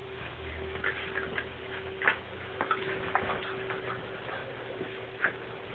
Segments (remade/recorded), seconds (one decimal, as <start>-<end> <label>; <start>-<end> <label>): 0.0-0.5 remade; 0.5-1.5 recorded; 1.5-3.4 remade; 3.4-4.4 recorded; 4.4-5.1 remade; 5.1-5.7 recorded